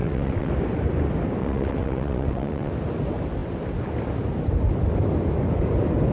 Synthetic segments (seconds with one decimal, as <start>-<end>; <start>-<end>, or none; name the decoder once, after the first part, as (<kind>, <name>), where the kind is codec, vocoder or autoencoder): 0.0-0.5 (vocoder, WaveNeXt); 1.4-2.7